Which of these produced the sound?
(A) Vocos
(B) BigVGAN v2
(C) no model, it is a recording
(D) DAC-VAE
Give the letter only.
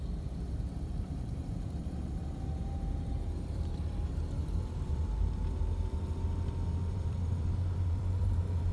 B